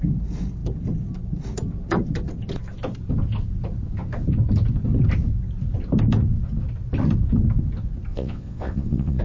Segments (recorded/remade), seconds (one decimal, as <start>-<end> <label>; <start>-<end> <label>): 0.0-8.1 recorded; 8.1-9.2 remade